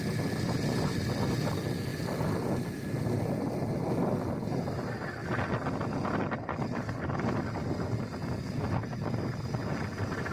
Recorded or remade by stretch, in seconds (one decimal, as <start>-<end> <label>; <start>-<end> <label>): 0.0-10.3 recorded